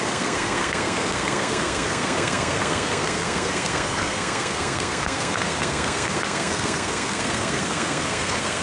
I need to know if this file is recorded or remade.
remade